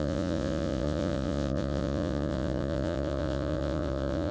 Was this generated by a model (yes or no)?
yes